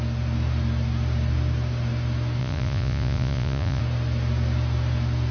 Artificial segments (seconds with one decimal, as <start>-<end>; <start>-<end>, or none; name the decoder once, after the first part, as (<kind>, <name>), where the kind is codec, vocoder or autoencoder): 2.4-3.8 (vocoder, Vocos)